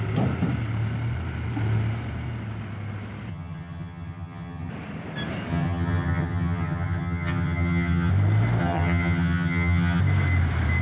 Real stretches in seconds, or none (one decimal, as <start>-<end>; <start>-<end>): 0.0-3.3; 4.7-5.5; 8.1-8.6; 10.0-10.8